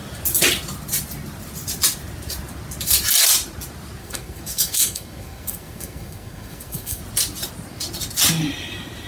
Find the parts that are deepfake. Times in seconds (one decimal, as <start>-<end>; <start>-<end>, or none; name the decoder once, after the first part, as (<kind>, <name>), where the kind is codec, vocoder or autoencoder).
4.0-7.0 (codec, SNAC)